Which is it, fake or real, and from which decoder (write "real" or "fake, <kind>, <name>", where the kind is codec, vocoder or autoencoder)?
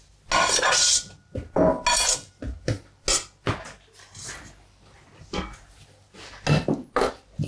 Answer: real